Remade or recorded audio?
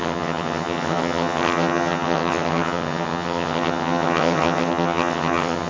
remade